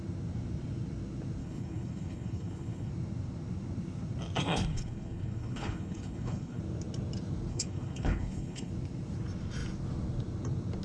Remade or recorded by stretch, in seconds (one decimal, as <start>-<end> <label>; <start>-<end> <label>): 0.0-1.4 recorded; 1.4-2.9 remade; 2.9-4.7 recorded; 4.7-6.6 remade; 6.6-7.5 recorded; 7.5-8.7 remade; 8.7-10.8 recorded